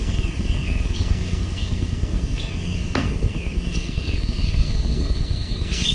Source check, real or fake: fake